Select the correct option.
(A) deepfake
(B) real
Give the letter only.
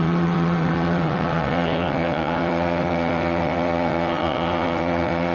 A